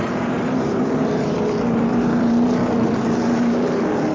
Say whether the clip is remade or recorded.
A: remade